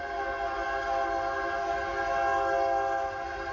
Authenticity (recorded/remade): recorded